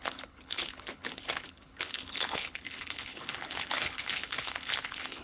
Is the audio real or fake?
fake